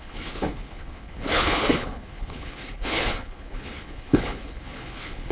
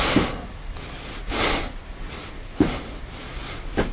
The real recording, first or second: second